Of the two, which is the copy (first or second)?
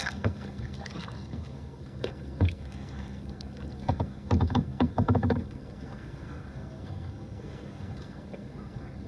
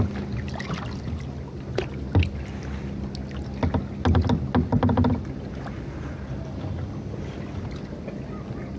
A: first